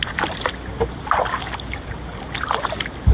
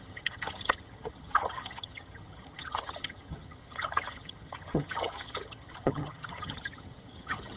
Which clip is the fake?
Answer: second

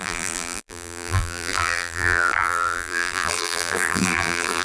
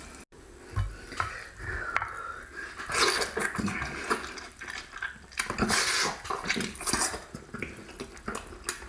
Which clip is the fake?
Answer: first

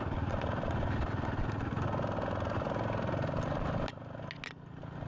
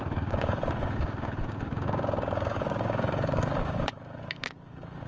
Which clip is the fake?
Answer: second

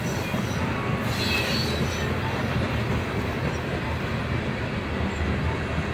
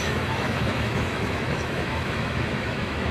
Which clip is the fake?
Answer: second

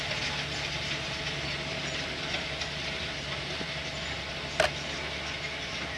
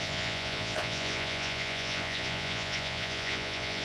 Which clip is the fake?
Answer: second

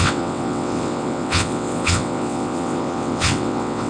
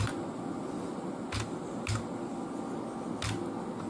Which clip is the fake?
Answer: first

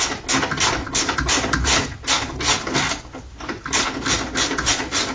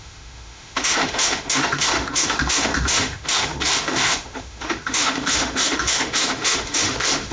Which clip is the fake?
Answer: second